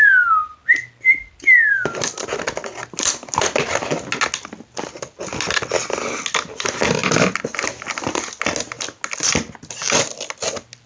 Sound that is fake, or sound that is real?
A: real